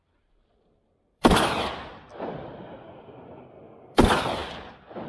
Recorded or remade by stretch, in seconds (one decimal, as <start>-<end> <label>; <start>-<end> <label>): 0.0-1.9 remade; 1.9-3.6 recorded; 3.6-4.4 remade; 4.4-5.1 recorded